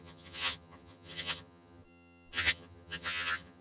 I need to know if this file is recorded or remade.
remade